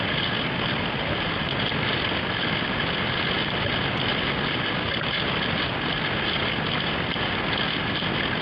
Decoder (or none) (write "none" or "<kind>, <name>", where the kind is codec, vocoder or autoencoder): none